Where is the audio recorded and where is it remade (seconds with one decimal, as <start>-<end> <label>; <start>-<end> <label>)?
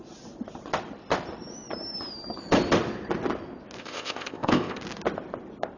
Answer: 0.0-3.8 recorded; 3.8-4.8 remade; 4.8-5.8 recorded